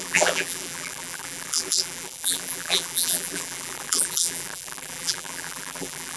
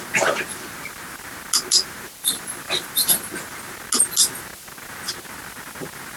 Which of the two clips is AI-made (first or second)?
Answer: first